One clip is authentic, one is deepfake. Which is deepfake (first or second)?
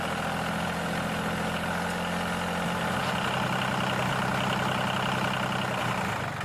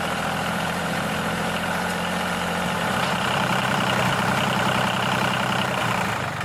second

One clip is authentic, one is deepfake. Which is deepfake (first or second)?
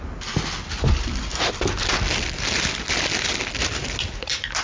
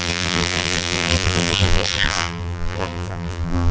second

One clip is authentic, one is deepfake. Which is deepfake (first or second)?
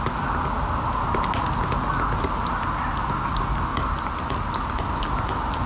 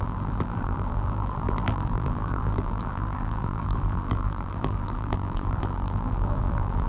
second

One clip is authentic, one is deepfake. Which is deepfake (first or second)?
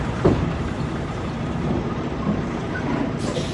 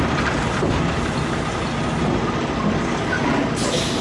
first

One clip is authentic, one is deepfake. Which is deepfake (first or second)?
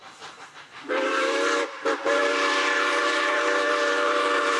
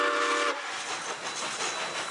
first